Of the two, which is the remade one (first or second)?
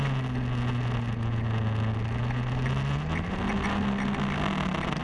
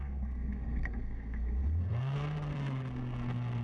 second